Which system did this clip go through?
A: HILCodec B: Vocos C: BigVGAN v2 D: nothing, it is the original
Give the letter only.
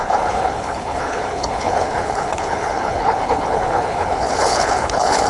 A